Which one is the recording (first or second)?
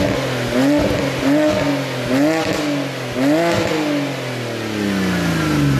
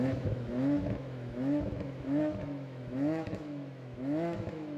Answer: first